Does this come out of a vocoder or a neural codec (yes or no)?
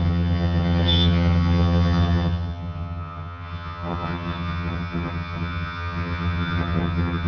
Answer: yes